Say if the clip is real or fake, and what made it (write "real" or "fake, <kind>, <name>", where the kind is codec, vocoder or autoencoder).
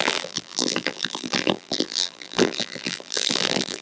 fake, vocoder, BigVGAN v2